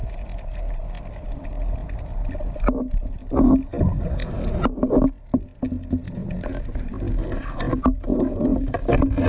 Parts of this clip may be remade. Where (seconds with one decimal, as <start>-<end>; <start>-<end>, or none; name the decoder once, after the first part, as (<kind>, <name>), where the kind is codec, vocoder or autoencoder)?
none

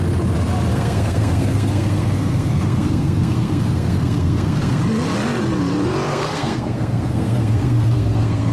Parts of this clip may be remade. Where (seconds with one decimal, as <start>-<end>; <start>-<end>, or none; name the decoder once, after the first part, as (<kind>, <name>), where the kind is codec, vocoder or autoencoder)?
0.7-4.8 (codec, SNAC); 6.1-8.5

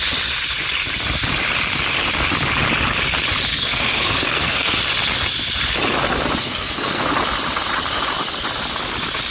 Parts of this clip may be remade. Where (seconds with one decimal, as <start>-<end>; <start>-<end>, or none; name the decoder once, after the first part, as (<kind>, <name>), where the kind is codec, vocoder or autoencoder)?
3.5-4.8 (codec, SNAC); 6.4-7.0

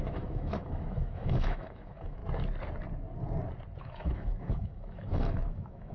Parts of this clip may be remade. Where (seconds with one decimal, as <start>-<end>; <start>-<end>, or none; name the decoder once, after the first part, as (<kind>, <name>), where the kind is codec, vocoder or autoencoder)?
0.0-2.2 (autoencoder, DAC-VAE); 3.8-5.9

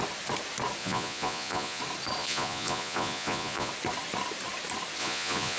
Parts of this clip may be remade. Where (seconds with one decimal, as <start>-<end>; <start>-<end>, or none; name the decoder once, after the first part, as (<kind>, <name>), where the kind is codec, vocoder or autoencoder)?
0.8-1.8 (vocoder, Vocos); 2.2-3.7; 5.0-5.6

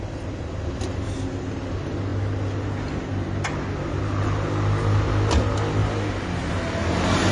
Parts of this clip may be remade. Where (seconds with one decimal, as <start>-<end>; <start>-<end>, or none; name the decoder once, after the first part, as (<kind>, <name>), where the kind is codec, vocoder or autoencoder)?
none

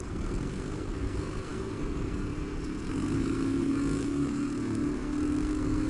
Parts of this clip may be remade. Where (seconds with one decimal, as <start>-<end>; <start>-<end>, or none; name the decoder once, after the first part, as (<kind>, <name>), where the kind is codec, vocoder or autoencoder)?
0.0-5.9 (codec, SNAC)

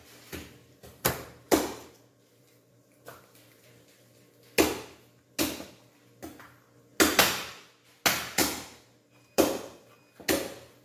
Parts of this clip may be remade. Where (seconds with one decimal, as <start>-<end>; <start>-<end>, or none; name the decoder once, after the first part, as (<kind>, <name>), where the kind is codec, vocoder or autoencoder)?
0.6-3.7 (vocoder, BigVGAN v2); 8.4-10.0